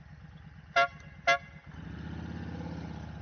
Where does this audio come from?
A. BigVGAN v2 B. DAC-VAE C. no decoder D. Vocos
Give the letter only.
C